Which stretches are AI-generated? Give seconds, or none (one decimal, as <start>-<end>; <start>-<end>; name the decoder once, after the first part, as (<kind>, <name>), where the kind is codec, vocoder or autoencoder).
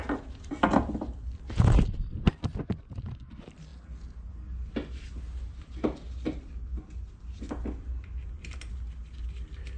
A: none